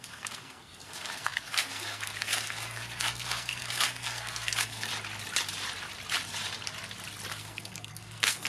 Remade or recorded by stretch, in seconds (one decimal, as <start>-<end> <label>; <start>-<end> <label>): 0.0-4.9 remade; 4.9-7.3 recorded; 7.3-8.5 remade